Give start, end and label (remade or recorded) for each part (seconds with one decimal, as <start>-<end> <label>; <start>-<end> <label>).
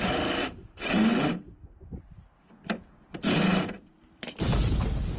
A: 0.0-0.4 recorded; 0.4-1.4 remade; 1.4-3.5 recorded; 3.5-4.7 remade; 4.7-5.2 recorded